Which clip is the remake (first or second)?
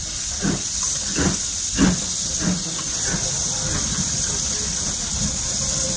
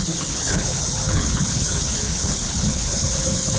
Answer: second